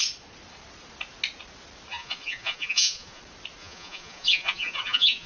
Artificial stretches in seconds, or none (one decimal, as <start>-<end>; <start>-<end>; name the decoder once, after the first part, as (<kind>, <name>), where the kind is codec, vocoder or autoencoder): 1.9-3.2 (vocoder, Vocos); 3.6-5.3